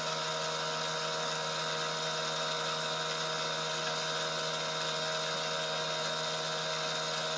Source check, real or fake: real